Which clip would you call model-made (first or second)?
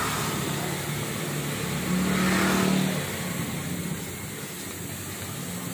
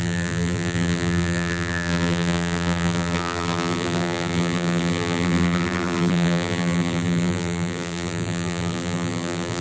second